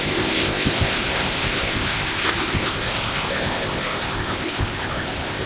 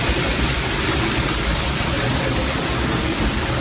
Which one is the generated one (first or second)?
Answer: first